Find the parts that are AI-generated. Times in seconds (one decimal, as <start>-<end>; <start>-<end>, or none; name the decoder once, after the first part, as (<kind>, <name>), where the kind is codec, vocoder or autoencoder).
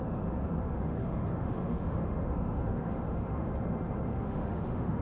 0.6-3.5 (autoencoder, DAC-VAE); 4.1-5.0